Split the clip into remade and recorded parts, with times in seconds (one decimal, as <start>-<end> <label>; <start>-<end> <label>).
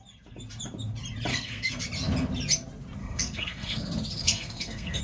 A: 0.0-1.3 recorded; 1.3-1.8 remade; 1.8-3.0 recorded; 3.0-3.8 remade; 3.8-4.2 recorded; 4.2-5.0 remade